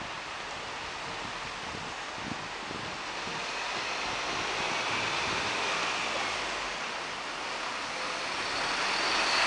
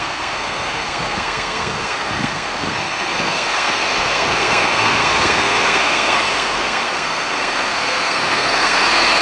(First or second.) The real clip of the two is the first